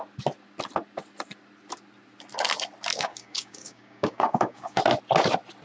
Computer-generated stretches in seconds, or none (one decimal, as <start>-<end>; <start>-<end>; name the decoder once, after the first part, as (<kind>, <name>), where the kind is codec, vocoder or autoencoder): 2.9-4.8 (codec, DAC)